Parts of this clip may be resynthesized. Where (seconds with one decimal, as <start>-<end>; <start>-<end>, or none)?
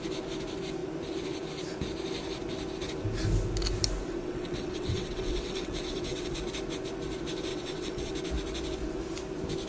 4.2-6.3; 7.5-8.1